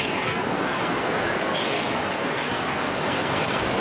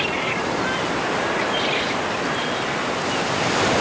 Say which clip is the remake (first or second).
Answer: first